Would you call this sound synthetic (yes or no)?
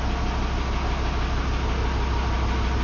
no